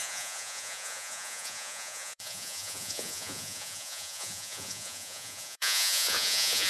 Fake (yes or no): yes